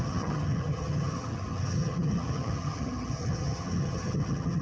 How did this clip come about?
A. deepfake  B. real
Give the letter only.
A